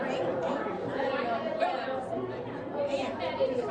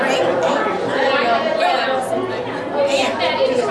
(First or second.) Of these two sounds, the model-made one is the first